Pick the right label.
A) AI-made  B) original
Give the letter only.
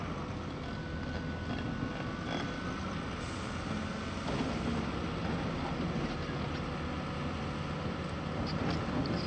B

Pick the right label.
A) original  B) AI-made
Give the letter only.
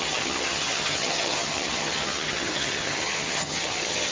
B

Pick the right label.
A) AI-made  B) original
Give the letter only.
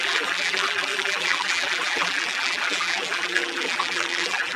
A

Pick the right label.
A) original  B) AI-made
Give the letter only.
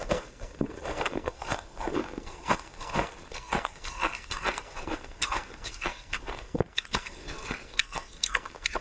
B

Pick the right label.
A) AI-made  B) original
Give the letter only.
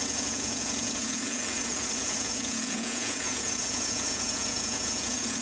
A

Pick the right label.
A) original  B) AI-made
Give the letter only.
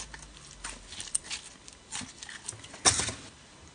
A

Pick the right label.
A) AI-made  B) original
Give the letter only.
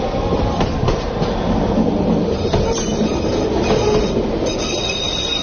B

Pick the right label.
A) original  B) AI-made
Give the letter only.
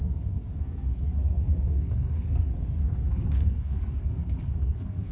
B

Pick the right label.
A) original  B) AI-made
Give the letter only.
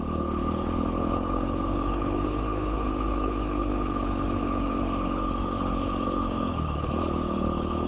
B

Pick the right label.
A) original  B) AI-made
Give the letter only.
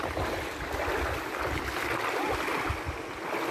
A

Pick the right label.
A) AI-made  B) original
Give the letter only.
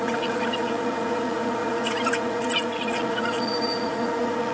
A